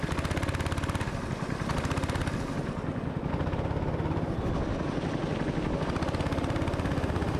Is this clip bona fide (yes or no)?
yes